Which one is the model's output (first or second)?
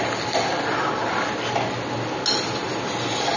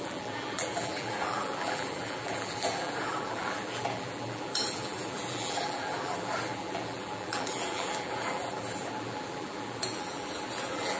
second